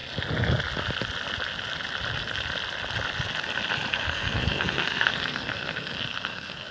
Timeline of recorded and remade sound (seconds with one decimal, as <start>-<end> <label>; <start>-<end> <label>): 0.0-3.9 recorded; 3.9-6.7 remade